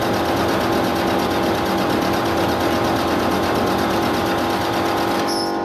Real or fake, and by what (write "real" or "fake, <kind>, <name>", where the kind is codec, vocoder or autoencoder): real